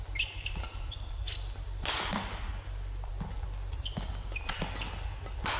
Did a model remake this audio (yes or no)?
no